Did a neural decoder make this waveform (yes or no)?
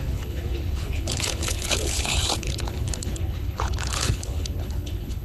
yes